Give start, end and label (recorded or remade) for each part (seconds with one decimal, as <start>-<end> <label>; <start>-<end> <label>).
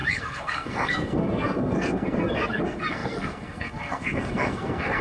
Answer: 0.0-5.0 remade